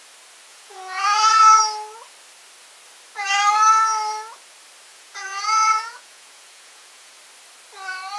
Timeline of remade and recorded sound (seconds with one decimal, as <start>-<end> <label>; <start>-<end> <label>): 0.0-0.5 recorded; 0.5-1.6 remade; 1.6-4.9 recorded; 4.9-7.2 remade; 7.2-8.2 recorded